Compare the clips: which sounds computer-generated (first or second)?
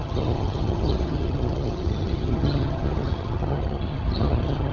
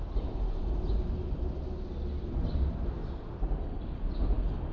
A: first